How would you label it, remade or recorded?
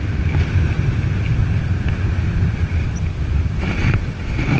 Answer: recorded